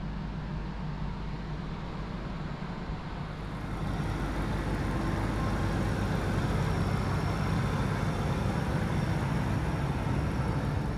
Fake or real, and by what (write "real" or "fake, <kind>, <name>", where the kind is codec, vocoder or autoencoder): real